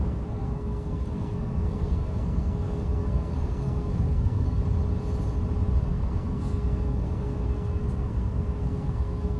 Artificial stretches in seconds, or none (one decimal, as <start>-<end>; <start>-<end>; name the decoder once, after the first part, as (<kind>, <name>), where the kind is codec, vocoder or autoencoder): 0.0-4.6 (codec, SNAC); 5.8-9.4